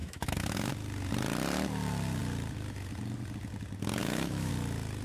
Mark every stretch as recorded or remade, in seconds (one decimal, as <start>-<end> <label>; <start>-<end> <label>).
0.0-0.7 remade; 0.7-4.0 recorded; 4.0-4.5 remade; 4.5-5.0 recorded